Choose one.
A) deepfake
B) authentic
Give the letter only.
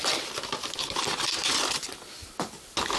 B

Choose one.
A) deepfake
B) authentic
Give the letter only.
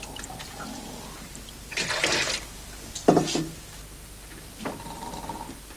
B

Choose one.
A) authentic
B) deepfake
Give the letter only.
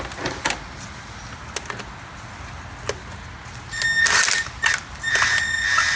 A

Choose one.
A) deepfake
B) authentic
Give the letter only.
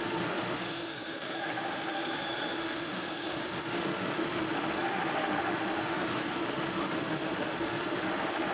A